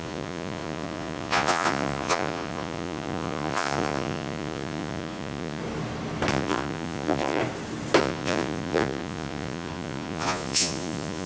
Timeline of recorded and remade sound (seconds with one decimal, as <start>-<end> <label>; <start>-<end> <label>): 0.0-5.6 remade; 5.6-6.3 recorded; 6.3-7.4 remade; 7.4-8.0 recorded; 8.0-11.3 remade